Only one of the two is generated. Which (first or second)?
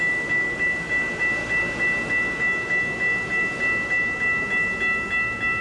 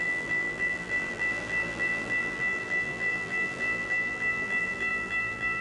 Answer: second